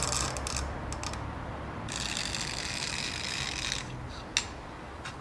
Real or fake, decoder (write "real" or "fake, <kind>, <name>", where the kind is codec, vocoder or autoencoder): real